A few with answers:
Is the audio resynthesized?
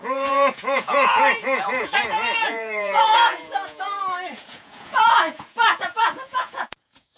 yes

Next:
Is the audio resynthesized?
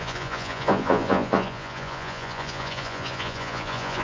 yes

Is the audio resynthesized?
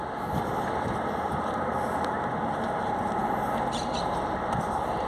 no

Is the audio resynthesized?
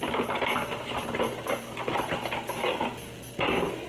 no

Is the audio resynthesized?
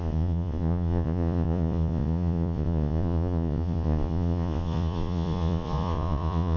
yes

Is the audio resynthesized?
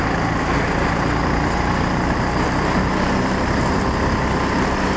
no